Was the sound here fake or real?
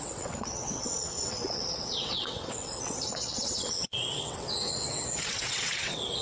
fake